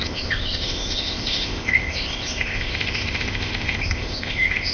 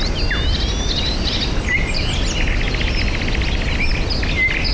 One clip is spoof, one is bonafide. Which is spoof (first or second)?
first